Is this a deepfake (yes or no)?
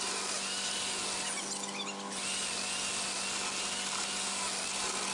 no